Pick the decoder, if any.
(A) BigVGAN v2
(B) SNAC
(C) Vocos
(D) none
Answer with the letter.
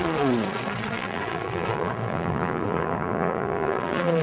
C